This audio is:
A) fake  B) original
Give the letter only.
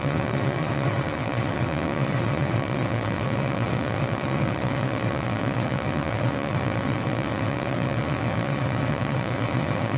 A